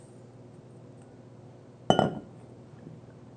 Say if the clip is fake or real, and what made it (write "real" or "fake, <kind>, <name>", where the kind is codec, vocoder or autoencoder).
real